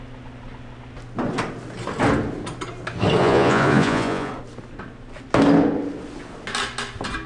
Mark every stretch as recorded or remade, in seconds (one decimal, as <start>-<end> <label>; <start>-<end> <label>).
0.0-3.2 recorded; 3.2-4.3 remade; 4.3-7.3 recorded